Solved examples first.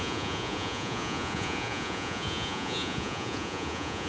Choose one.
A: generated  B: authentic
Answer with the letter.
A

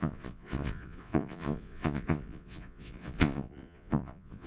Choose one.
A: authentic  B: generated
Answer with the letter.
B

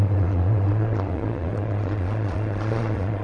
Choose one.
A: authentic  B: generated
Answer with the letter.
B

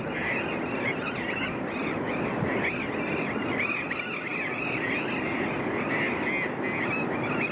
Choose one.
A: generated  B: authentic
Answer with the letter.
B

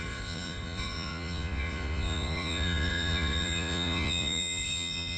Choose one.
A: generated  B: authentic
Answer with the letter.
A